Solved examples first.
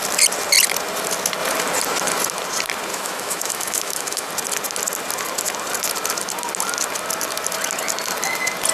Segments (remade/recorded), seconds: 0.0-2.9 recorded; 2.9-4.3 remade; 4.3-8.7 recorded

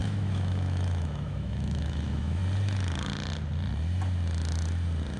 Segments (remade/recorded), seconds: 0.0-2.4 remade; 2.4-5.2 recorded

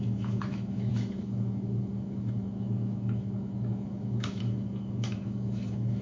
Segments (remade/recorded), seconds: 0.0-6.0 remade

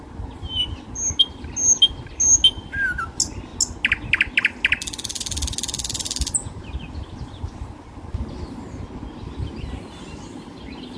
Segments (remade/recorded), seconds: 0.0-11.0 recorded